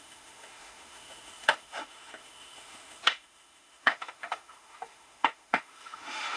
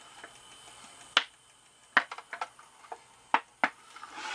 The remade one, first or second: first